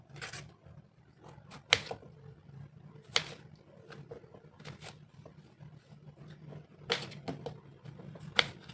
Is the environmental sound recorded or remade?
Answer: recorded